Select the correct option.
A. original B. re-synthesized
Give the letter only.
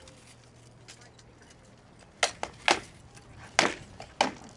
A